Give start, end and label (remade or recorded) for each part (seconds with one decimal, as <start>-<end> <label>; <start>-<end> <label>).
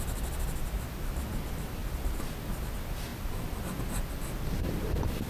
0.0-5.3 recorded